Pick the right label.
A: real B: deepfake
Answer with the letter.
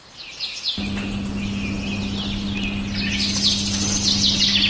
A